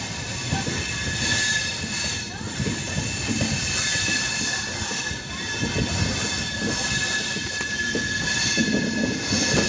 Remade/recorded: recorded